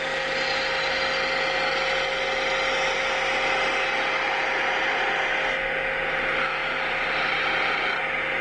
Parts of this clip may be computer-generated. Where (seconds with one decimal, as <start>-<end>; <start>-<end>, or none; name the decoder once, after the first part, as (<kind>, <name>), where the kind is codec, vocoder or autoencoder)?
none